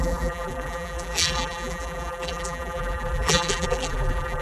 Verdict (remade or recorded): remade